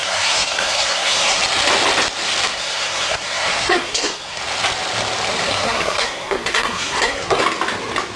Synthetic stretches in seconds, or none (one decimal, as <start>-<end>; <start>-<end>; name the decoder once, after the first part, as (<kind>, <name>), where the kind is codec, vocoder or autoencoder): 0.0-1.4 (codec, SNAC); 2.5-4.4; 5.5-7.4